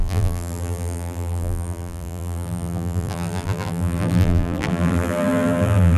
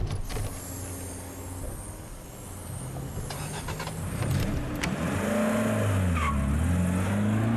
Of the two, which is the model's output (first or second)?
first